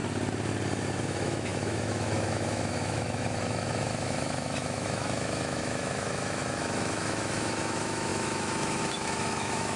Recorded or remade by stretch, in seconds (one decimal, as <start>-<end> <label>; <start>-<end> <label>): 0.0-1.0 recorded; 1.0-9.8 remade